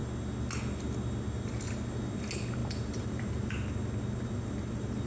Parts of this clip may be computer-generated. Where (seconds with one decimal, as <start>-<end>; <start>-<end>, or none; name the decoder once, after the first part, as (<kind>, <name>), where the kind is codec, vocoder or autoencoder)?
2.6-3.5 (vocoder, BigVGAN v2)